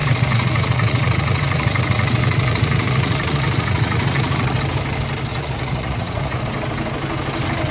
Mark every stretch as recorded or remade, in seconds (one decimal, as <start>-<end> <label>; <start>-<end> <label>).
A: 0.0-4.6 remade; 4.6-5.3 recorded; 5.3-6.4 remade; 6.4-7.7 recorded